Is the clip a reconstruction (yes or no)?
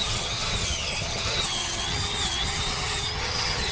yes